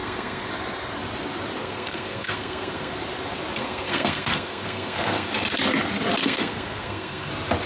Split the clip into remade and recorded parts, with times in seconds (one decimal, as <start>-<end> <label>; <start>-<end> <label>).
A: 0.0-0.5 remade; 0.5-1.6 recorded; 1.6-3.0 remade; 3.0-3.6 recorded; 3.6-5.3 remade; 5.3-6.2 recorded; 6.2-7.3 remade; 7.3-7.7 recorded